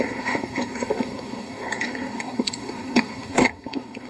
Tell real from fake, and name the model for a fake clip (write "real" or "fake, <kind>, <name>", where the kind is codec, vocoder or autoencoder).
fake, codec, SNAC